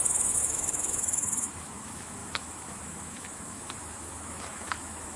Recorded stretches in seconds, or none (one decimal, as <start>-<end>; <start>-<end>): none